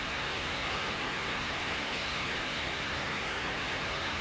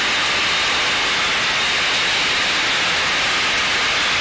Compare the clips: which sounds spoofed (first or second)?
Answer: first